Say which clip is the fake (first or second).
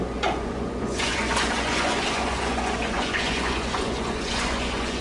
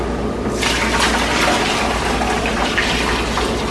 first